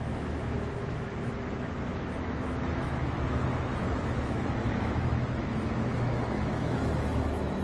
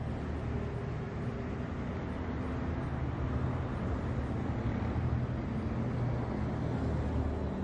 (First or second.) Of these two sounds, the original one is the second